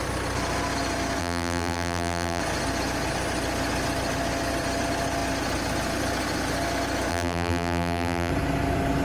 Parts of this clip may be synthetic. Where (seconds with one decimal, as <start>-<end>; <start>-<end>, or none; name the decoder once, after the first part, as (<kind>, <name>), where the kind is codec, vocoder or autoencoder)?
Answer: 1.2-2.4 (vocoder, BigVGAN v2); 7.1-8.3